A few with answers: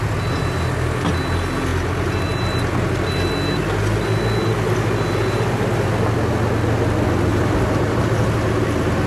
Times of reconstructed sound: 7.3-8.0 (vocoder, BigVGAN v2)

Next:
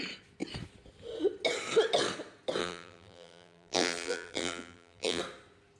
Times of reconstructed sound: 2.6-5.2 (vocoder, BigVGAN v2)

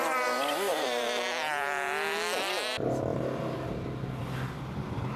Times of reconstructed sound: none

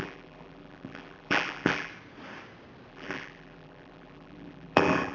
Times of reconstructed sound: 0.0-1.9 (vocoder, BigVGAN v2); 2.9-5.1

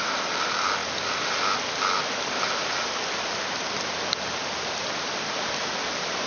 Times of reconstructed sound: 0.0-0.8 (vocoder, BigVGAN v2); 3.7-6.3

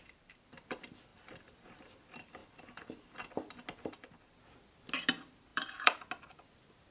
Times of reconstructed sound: 1.1-1.8 (vocoder, BigVGAN v2); 5.5-6.1